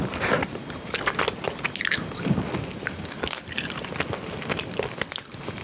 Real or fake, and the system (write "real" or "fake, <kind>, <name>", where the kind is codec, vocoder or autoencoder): real